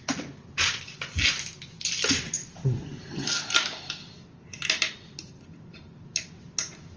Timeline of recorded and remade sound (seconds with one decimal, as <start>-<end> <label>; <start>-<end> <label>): 0.0-2.4 recorded; 2.4-4.1 remade; 4.1-7.0 recorded